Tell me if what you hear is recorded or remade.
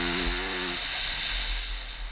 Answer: recorded